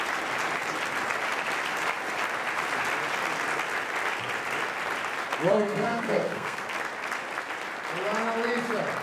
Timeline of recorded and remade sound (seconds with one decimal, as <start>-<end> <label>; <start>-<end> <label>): 0.0-5.5 recorded; 5.5-6.6 remade; 6.6-9.0 recorded

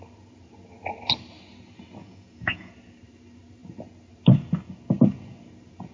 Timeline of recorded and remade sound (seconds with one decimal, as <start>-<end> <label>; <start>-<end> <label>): 0.0-2.0 recorded; 2.0-2.7 remade; 2.7-5.9 recorded